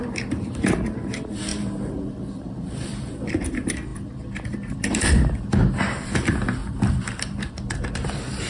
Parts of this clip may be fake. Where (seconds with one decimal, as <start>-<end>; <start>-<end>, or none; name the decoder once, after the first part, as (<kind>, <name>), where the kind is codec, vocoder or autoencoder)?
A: 0.0-8.5 (vocoder, BigVGAN v2)

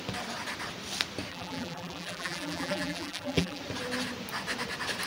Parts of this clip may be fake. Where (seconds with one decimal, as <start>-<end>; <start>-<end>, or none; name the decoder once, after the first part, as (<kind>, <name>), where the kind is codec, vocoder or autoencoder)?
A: 1.3-3.6 (vocoder, BigVGAN v2)

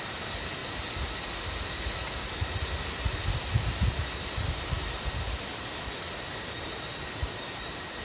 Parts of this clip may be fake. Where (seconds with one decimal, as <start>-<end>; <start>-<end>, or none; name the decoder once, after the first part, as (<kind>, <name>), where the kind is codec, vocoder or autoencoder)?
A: none

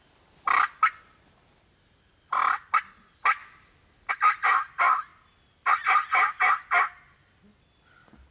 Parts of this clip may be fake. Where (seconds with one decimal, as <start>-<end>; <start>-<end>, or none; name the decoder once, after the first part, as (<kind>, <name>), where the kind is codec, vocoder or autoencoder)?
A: 5.1-6.3 (vocoder, BigVGAN v2)

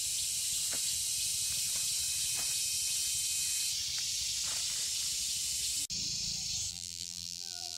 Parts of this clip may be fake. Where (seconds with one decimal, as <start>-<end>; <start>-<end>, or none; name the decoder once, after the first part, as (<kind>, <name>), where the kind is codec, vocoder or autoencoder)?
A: 6.7-7.8 (vocoder, BigVGAN v2)

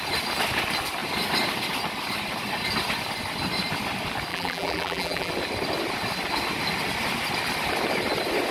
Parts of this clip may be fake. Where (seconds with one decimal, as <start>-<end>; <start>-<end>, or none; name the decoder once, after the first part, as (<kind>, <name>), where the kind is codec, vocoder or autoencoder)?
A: 4.3-5.3 (vocoder, BigVGAN v2)

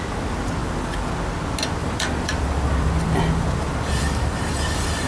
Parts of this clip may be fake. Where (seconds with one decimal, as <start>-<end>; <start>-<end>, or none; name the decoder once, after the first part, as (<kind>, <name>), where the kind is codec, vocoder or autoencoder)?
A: 0.6-1.1 (vocoder, BigVGAN v2); 1.8-5.1

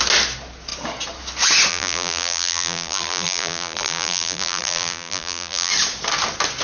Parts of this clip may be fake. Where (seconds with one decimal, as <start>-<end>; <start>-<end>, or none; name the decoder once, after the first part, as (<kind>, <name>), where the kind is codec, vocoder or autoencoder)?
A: 1.7-5.7 (vocoder, BigVGAN v2)